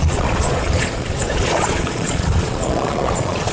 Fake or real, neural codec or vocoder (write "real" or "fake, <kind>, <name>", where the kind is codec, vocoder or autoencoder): fake, vocoder, Vocos